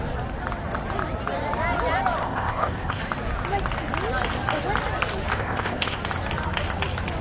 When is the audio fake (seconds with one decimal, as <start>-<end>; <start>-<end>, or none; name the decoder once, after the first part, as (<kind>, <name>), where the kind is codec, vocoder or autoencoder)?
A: 2.2-3.0 (codec, ZipCodec); 5.3-6.0